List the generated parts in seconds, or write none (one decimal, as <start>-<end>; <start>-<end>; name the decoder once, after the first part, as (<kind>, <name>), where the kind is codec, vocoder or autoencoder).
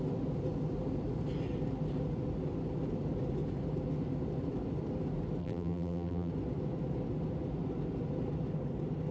5.4-6.3 (vocoder, BigVGAN v2)